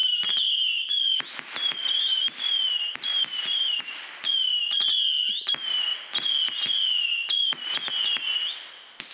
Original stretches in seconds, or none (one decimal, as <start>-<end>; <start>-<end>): 0.9-1.8; 2.5-3.1; 3.8-9.1